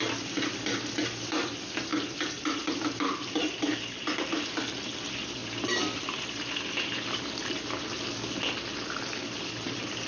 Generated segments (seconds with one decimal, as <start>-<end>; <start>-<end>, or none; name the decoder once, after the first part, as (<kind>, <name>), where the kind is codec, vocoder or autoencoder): 0.0-10.1 (vocoder, BigVGAN v2)